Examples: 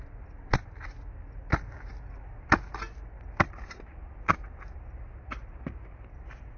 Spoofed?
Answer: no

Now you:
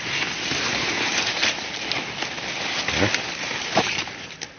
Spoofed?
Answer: no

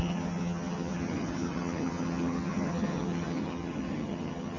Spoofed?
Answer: yes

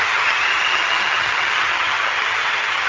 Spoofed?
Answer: yes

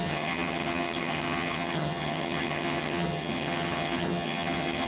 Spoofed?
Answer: yes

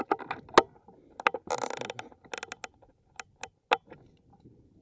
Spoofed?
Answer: no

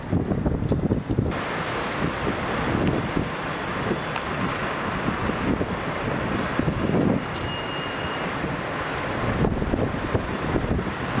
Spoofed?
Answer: no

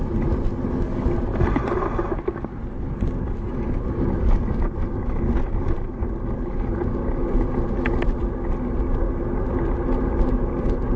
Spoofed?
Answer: no